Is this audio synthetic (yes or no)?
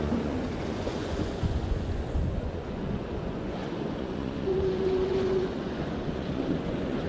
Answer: yes